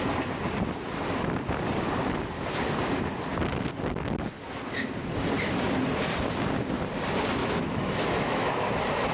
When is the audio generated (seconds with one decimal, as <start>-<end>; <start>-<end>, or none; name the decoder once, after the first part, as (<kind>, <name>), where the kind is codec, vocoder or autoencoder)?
7.4-8.5 (autoencoder, DAC-VAE)